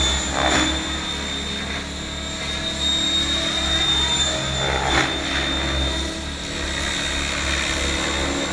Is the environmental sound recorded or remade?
recorded